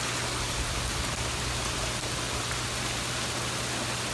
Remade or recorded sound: recorded